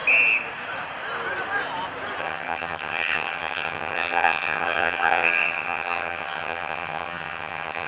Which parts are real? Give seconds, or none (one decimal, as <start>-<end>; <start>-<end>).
0.0-2.2